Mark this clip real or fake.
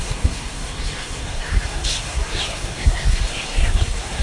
fake